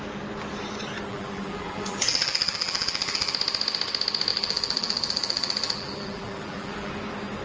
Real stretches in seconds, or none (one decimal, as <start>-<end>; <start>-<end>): 0.0-1.1; 3.3-4.3; 6.9-7.4